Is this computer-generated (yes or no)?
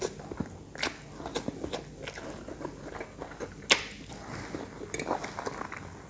no